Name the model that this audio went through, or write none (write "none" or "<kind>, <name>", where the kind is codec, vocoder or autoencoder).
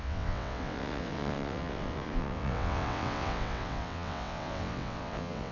vocoder, WaveNeXt